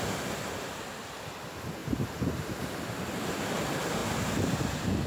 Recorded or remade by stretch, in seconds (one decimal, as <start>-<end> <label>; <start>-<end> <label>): 0.0-1.8 recorded; 1.8-3.5 remade; 3.5-4.0 recorded; 4.0-5.1 remade